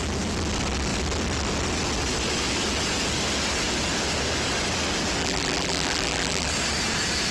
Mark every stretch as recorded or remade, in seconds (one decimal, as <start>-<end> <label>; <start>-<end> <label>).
0.0-5.2 recorded; 5.2-6.5 remade; 6.5-7.3 recorded